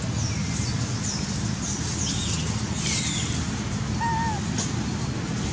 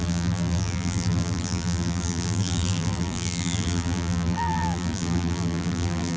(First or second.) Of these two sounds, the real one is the first